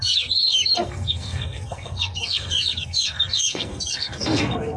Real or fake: fake